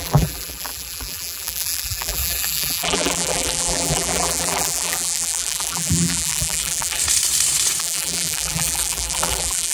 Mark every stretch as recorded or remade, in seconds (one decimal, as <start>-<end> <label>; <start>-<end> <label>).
0.0-7.0 remade; 7.0-7.8 recorded; 7.8-9.7 remade